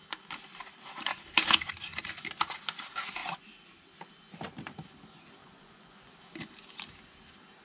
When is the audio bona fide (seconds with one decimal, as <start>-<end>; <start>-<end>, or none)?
0.0-5.4; 6.1-7.6